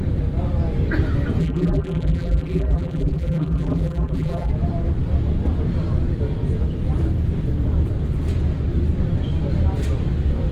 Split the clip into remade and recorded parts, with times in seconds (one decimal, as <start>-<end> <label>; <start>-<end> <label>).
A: 0.0-1.4 recorded; 1.4-4.5 remade; 4.5-10.5 recorded